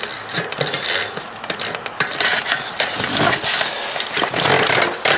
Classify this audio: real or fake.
real